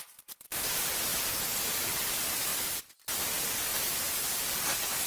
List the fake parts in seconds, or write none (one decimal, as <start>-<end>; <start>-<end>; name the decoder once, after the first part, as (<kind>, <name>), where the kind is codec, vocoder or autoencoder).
0.0-1.1 (vocoder, BigVGAN v2); 1.7-2.5; 3.2-3.7